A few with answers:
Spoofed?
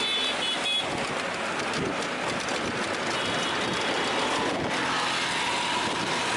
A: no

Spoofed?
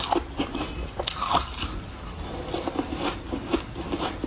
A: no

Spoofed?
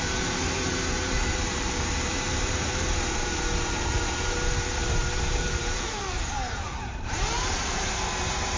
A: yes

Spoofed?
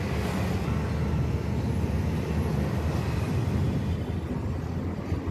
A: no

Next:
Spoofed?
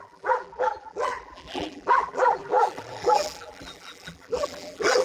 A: yes